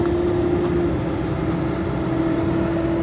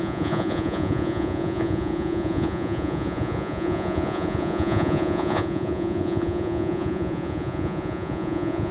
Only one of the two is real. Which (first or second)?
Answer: first